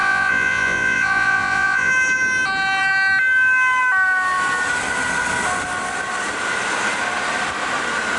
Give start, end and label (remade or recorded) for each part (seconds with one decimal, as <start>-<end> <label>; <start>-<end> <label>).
0.0-1.9 remade; 1.9-8.2 recorded